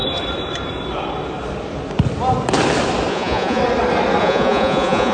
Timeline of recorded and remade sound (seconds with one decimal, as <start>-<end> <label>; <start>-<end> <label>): 0.0-3.1 recorded; 3.1-3.6 remade; 3.6-4.2 recorded; 4.2-5.1 remade